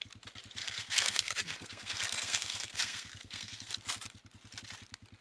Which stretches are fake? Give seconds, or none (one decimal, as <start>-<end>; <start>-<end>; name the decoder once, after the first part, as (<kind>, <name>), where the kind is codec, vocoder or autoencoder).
0.6-3.7 (codec, SNAC)